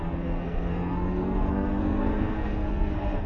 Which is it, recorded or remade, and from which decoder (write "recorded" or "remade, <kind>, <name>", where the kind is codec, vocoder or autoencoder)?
remade, codec, SNAC